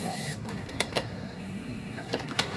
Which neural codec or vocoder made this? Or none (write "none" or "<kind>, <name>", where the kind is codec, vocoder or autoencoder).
codec, SNAC